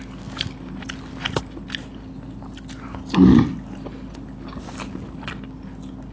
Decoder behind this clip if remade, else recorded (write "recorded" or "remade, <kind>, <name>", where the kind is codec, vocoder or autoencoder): recorded